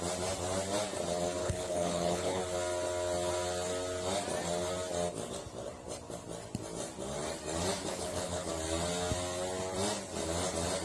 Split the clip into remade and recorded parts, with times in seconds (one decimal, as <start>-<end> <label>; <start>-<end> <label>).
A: 0.0-1.4 recorded; 1.4-2.4 remade; 2.4-7.9 recorded; 7.9-8.5 remade; 8.5-10.8 recorded